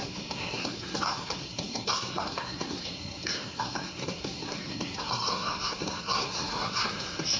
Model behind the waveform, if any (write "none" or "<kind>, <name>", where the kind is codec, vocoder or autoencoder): codec, SNAC